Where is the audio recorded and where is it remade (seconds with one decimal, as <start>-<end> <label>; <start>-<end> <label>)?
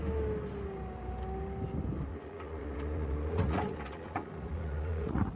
0.0-2.1 recorded; 2.1-5.4 remade